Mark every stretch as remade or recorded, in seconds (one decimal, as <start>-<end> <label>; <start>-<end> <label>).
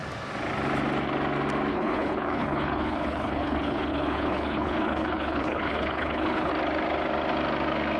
0.0-1.7 recorded; 1.7-6.5 remade; 6.5-8.0 recorded